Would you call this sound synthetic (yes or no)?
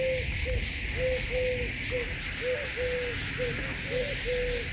no